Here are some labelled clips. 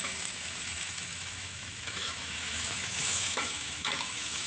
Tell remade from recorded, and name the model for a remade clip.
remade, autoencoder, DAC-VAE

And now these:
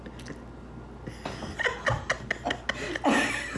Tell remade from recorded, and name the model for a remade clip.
recorded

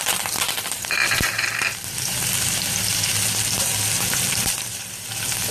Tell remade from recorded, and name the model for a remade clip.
remade, vocoder, BigVGAN v2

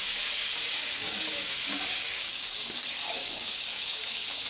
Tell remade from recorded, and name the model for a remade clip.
remade, codec, DAC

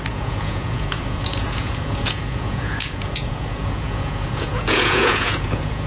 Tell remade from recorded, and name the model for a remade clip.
remade, vocoder, Vocos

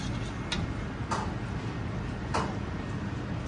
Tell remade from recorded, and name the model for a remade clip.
recorded